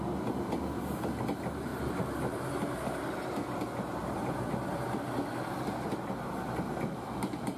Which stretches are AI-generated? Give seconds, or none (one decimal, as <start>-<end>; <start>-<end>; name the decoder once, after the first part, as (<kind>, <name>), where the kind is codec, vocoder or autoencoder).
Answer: none